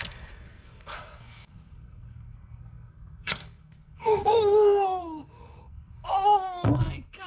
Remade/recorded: remade